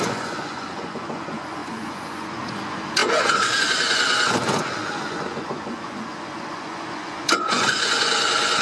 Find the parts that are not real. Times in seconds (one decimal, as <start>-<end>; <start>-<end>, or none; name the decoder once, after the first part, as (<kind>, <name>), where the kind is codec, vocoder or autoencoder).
0.0-8.6 (vocoder, Vocos)